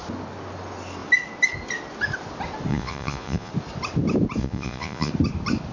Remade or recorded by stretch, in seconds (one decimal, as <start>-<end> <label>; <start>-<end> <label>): 0.0-2.7 recorded; 2.7-3.5 remade; 3.5-4.4 recorded; 4.4-5.1 remade; 5.1-5.7 recorded